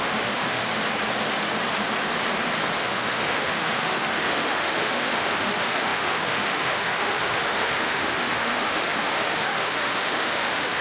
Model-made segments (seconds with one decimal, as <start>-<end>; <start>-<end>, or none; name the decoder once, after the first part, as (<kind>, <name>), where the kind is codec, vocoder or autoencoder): 0.0-0.6 (autoencoder, DAC-VAE); 2.8-10.8